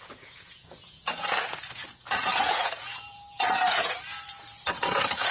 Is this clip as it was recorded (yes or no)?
no